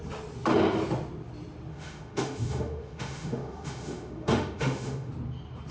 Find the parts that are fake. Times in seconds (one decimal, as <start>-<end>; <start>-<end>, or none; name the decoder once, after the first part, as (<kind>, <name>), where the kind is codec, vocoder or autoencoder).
1.7-5.1 (autoencoder, DAC-VAE)